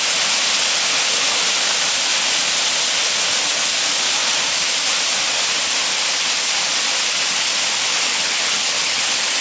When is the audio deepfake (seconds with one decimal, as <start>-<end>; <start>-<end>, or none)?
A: 8.1-9.0